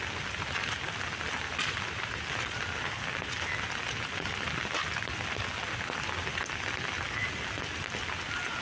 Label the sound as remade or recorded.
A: recorded